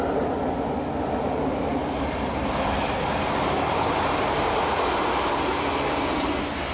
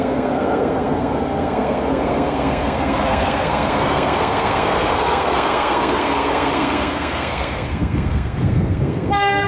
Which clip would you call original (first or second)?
first